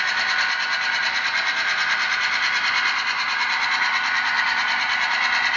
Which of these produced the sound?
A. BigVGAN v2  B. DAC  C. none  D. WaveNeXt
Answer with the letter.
C